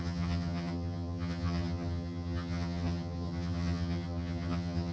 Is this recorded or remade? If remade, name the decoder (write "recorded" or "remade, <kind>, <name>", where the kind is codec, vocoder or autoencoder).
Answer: remade, vocoder, HiFi-GAN